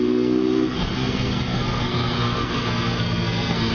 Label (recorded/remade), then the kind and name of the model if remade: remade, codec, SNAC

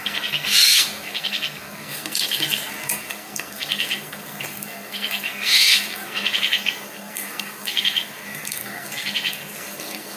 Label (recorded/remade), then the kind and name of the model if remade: remade, codec, SNAC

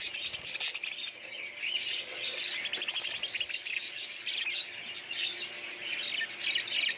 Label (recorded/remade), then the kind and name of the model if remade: recorded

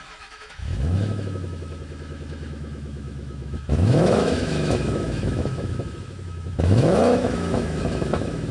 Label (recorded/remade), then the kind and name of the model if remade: remade, autoencoder, DAC-VAE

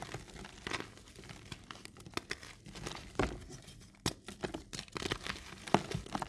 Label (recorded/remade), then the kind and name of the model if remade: recorded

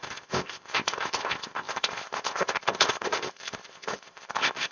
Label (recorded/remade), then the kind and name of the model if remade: remade, codec, ZipCodec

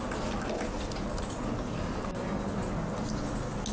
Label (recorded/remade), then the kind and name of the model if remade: recorded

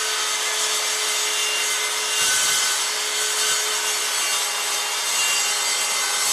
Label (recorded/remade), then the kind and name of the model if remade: recorded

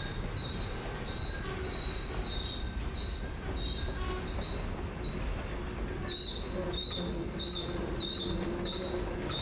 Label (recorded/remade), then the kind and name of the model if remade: recorded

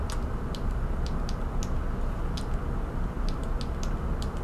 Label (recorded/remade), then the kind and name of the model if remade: recorded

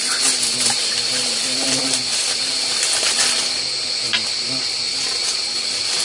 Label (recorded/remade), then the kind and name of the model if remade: recorded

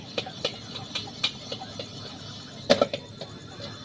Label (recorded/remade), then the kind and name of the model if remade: recorded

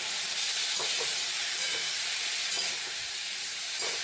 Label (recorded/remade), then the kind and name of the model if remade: remade, vocoder, BigVGAN v2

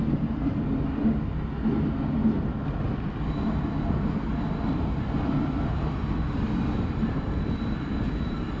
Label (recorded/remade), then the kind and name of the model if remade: recorded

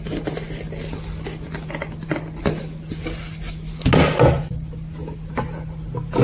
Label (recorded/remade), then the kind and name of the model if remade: recorded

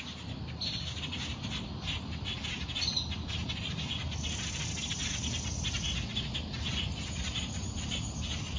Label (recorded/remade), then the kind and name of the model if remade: recorded